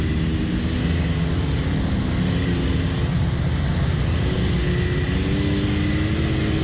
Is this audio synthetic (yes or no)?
no